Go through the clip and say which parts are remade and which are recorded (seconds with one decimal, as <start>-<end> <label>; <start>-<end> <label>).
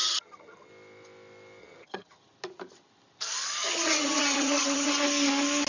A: 0.0-0.7 remade; 0.7-1.6 recorded; 1.6-2.2 remade; 2.2-3.6 recorded; 3.6-4.9 remade; 4.9-5.7 recorded